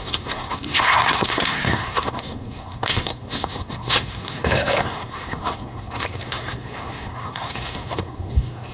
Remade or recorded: remade